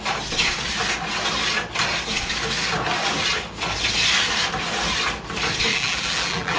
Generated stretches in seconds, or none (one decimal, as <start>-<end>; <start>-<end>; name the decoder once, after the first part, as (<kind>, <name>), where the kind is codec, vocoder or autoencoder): 5.7-6.6 (vocoder, BigVGAN v2)

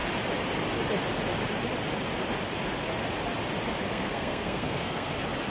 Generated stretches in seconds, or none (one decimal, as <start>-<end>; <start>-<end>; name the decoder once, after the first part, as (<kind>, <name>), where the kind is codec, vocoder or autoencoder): 3.9-5.1 (codec, SNAC)

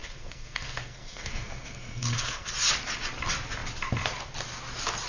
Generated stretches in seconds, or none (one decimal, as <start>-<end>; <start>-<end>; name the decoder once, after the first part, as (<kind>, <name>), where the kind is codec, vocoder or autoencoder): 0.0-2.5 (codec, SNAC)

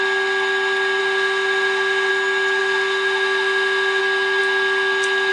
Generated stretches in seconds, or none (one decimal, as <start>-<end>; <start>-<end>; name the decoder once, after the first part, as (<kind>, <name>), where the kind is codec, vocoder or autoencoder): 1.0-2.1 (autoencoder, DAC-VAE); 2.6-4.0

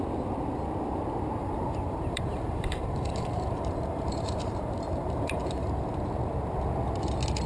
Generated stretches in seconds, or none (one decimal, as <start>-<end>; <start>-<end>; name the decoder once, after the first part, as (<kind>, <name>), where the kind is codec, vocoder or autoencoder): 1.4-5.8 (vocoder, BigVGAN v2)